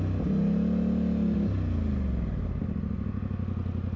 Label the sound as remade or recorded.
recorded